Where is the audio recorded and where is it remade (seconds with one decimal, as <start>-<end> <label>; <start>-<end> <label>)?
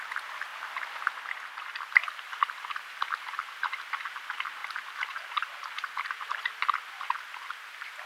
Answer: 0.0-4.6 recorded; 4.6-6.5 remade; 6.5-8.1 recorded